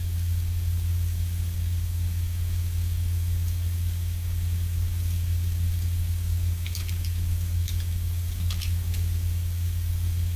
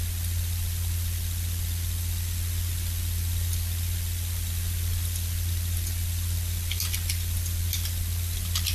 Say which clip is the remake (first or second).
first